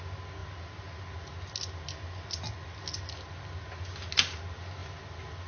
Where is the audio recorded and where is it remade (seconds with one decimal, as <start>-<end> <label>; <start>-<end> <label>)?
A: 0.0-5.5 recorded